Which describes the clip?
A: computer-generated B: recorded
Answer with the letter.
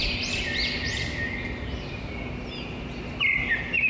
B